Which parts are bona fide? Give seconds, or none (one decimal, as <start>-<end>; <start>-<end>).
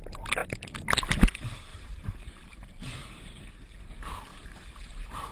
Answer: 0.0-1.7; 3.5-4.3